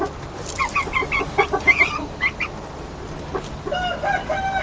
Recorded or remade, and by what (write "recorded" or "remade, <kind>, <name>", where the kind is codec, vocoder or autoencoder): recorded